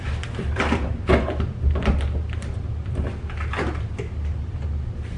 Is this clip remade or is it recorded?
recorded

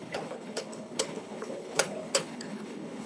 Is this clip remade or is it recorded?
remade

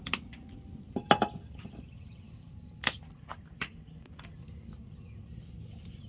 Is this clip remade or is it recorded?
recorded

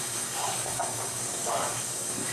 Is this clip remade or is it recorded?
remade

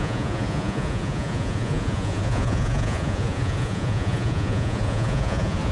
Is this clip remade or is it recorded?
remade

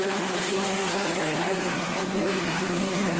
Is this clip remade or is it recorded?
remade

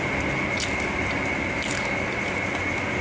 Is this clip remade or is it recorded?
recorded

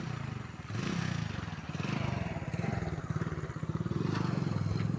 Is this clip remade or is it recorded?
recorded